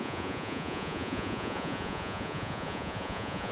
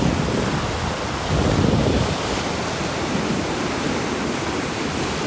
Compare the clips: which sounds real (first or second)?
second